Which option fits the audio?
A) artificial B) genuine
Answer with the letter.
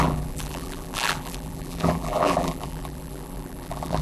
A